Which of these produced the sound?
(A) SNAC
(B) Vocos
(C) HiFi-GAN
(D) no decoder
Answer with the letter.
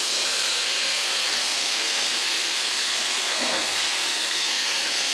A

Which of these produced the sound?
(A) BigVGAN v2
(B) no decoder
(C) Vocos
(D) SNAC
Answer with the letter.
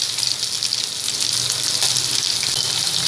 B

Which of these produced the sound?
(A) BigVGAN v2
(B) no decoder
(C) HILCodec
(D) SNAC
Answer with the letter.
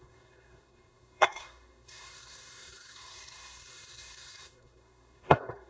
D